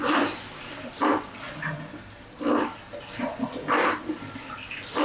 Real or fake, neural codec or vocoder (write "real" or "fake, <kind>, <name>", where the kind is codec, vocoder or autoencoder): real